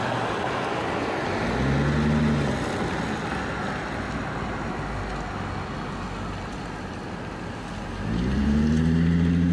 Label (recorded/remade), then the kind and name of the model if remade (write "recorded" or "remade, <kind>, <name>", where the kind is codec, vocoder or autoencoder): recorded